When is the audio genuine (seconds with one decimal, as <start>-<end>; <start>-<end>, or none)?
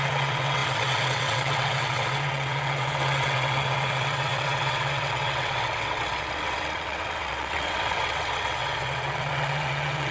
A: none